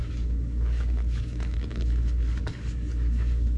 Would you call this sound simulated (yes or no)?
yes